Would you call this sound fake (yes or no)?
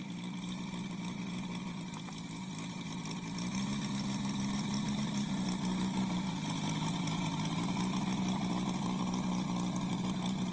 no